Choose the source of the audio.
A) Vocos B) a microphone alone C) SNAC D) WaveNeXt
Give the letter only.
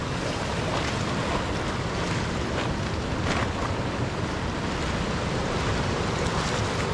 B